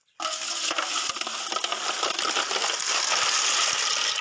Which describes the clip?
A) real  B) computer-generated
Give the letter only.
A